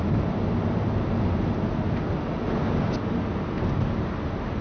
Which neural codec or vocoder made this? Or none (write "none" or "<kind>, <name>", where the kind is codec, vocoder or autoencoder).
none